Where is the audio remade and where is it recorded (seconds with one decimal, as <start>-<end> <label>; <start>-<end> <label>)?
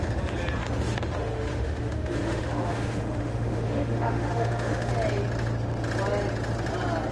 0.0-0.6 recorded; 0.6-4.9 remade; 4.9-7.1 recorded